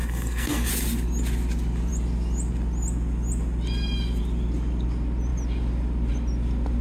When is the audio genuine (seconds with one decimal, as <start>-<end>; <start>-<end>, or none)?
0.7-6.8